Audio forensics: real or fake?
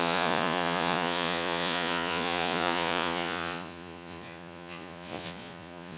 fake